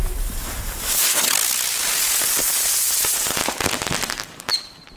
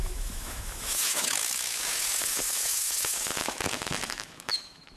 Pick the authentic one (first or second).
first